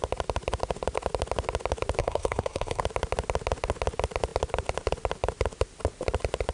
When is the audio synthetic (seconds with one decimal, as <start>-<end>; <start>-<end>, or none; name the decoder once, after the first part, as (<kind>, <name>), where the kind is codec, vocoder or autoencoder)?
2.0-2.8 (codec, SNAC)